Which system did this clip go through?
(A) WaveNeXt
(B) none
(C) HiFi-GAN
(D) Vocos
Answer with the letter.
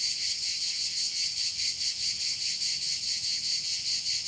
C